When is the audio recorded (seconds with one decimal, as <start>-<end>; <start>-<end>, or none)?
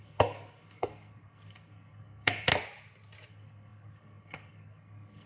2.5-3.3